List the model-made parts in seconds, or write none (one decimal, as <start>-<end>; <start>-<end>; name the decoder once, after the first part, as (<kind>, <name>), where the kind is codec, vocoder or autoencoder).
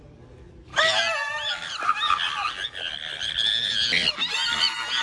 none